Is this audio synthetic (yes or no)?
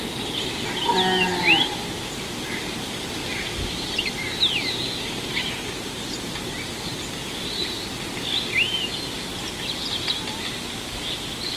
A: no